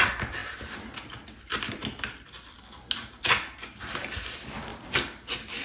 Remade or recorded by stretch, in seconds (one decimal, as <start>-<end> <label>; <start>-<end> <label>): 0.0-5.6 recorded